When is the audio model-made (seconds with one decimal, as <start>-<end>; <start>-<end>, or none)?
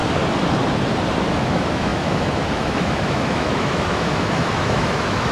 1.3-5.3